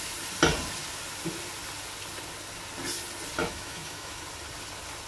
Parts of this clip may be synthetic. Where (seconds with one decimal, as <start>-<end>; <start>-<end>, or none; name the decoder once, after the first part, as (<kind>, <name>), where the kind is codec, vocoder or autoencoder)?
3.4-4.2 (autoencoder, DAC-VAE)